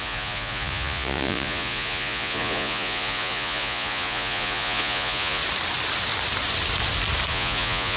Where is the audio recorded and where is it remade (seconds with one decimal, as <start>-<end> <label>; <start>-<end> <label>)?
0.0-5.4 remade; 5.4-7.3 recorded; 7.3-8.0 remade